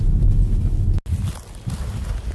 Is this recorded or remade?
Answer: recorded